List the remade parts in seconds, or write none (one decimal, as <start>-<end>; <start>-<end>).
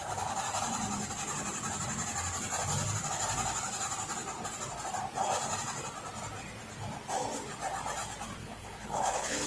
8.4-9.5